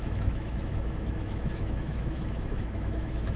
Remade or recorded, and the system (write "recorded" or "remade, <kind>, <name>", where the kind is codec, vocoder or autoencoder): remade, autoencoder, DAC-VAE